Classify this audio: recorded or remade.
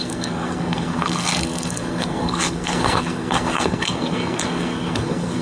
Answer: remade